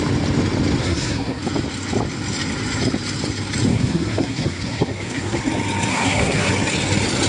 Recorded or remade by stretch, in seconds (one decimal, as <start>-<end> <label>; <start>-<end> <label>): 0.0-0.8 recorded; 0.8-1.4 remade; 1.4-3.7 recorded; 3.7-5.4 remade; 5.4-5.9 recorded; 5.9-6.5 remade; 6.5-7.3 recorded